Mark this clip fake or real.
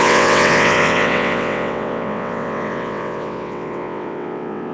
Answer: fake